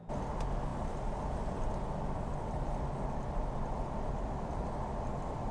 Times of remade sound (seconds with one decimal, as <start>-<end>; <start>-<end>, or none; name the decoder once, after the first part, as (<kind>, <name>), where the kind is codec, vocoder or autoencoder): none